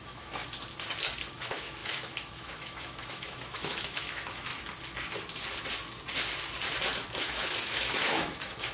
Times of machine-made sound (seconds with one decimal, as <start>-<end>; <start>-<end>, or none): 0.0-0.4; 1.3-4.5; 7.2-8.7